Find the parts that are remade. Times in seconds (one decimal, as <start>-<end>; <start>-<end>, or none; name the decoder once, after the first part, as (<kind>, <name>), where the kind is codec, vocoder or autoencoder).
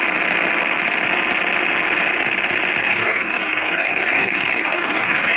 2.8-5.4 (codec, DAC)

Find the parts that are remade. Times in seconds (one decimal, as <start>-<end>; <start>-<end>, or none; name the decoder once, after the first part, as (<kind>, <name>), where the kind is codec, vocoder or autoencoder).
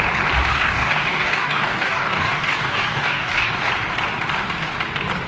0.5-3.7 (codec, DAC)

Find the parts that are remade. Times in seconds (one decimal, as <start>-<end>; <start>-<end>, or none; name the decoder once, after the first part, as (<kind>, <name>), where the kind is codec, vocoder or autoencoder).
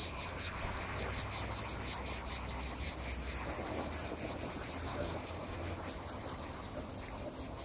4.9-5.6 (codec, DAC)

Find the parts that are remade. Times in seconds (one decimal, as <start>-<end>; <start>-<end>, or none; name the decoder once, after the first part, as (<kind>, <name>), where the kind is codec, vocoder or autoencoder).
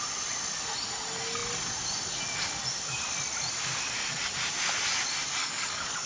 5.4-6.1 (codec, DAC)